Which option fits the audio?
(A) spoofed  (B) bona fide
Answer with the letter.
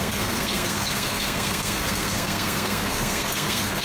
A